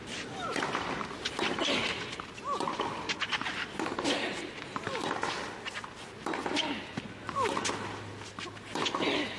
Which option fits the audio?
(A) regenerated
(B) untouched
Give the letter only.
B